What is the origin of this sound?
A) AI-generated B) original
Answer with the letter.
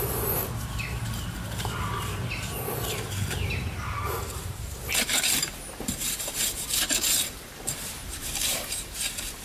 A